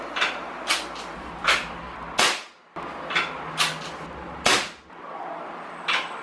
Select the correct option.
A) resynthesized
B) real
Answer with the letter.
B